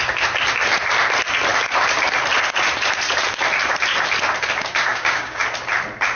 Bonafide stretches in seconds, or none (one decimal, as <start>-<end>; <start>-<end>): 0.0-4.9; 5.4-6.2